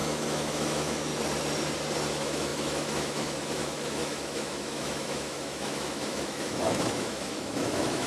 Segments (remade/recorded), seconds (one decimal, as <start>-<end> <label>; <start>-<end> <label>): 0.0-1.1 remade; 1.1-2.1 recorded; 2.1-8.1 remade